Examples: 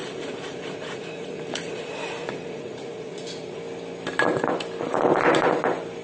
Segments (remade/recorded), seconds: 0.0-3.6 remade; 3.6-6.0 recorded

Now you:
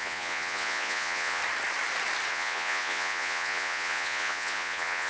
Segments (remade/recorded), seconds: 0.0-1.4 remade; 1.4-2.3 recorded; 2.3-5.1 remade

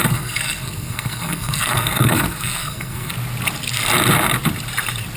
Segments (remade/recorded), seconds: 0.0-3.1 remade; 3.1-5.2 recorded